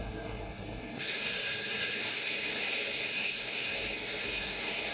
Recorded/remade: remade